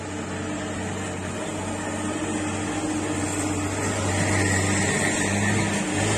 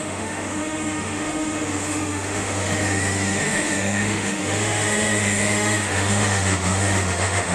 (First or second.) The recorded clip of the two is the first